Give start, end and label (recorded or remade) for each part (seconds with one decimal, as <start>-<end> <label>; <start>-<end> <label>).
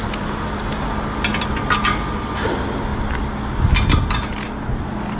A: 0.0-5.2 recorded